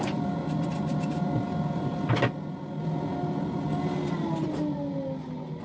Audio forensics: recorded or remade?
recorded